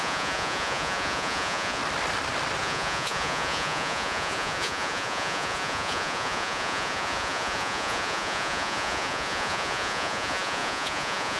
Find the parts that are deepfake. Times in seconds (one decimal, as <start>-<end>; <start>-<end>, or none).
0.0-1.8; 2.6-11.4